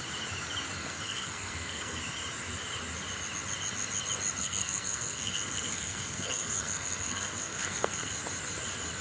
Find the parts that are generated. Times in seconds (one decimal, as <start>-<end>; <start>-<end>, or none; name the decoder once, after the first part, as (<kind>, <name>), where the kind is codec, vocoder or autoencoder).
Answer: 0.8-2.0 (codec, SNAC); 4.4-8.1